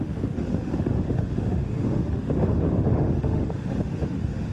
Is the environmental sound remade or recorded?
remade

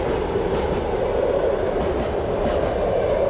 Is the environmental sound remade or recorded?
recorded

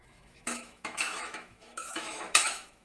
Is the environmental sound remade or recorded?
remade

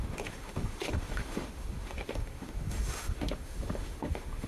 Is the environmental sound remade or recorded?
remade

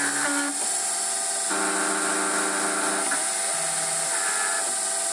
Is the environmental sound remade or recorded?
recorded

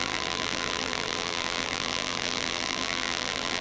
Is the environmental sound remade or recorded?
remade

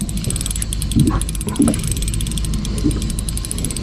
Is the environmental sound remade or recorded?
recorded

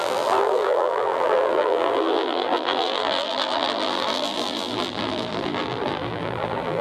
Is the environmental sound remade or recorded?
remade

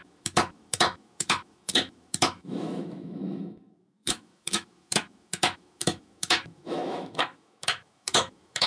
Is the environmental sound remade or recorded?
remade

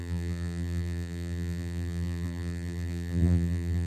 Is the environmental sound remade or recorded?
remade